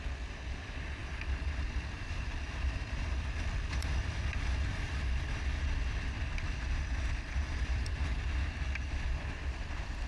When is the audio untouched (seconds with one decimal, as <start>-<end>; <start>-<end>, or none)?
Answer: 0.0-1.0; 5.6-7.4; 8.5-10.1